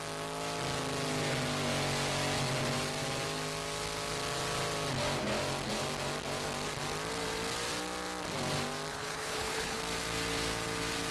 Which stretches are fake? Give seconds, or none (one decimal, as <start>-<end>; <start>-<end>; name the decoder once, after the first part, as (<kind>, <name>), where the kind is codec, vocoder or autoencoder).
8.9-9.8 (codec, HILCodec)